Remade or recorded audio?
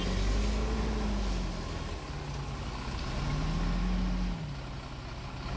recorded